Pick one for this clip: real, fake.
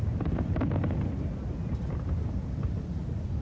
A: real